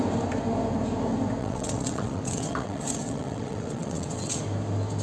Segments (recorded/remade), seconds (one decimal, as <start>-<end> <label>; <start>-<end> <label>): 0.0-1.4 recorded; 1.4-4.4 remade; 4.4-5.0 recorded